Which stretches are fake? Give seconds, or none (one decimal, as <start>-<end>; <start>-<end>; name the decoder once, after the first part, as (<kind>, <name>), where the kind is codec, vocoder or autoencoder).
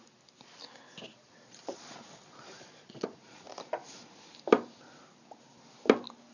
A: 1.1-3.6 (vocoder, Vocos)